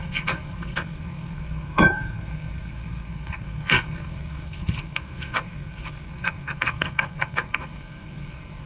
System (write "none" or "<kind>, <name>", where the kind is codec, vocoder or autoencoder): codec, SNAC